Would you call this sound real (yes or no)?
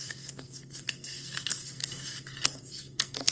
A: no